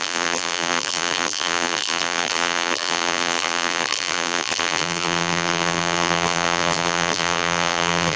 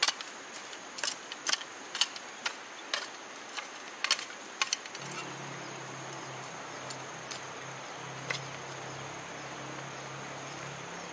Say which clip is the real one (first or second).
second